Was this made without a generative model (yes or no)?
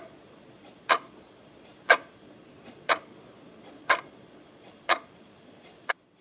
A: no